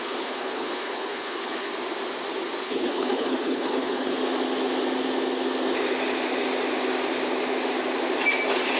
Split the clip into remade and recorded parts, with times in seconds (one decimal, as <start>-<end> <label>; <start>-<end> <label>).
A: 0.0-1.7 remade; 1.7-2.6 recorded; 2.6-4.2 remade; 4.2-8.8 recorded